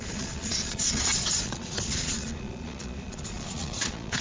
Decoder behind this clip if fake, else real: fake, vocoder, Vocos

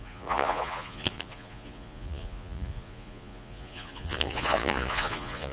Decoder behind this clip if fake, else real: fake, vocoder, Vocos